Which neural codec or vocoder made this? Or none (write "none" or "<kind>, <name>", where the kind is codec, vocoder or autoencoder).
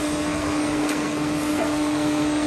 codec, SNAC